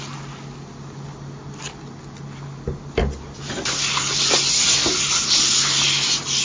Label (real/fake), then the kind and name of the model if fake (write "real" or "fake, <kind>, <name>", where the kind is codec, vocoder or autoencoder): real